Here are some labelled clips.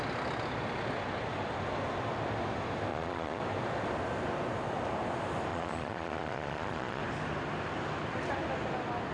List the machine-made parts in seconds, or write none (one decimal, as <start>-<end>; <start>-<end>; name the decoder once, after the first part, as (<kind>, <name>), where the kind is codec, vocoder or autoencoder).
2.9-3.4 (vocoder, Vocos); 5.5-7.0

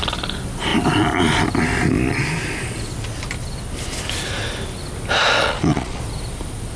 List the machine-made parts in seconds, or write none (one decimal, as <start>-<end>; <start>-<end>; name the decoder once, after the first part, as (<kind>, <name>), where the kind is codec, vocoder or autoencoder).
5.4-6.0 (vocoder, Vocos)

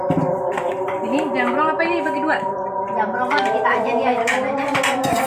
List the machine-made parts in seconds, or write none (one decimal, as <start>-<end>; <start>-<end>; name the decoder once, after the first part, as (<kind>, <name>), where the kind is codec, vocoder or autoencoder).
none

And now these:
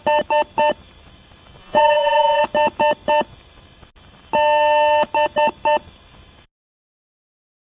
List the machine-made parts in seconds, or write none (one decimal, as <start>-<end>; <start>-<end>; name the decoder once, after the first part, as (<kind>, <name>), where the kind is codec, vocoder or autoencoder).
1.6-2.4 (vocoder, Vocos)

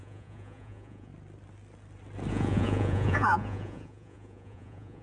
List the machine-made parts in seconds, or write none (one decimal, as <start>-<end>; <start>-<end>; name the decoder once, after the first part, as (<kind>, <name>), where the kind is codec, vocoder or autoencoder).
0.0-1.1 (vocoder, Vocos); 2.3-5.0